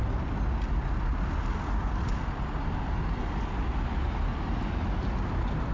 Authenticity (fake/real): real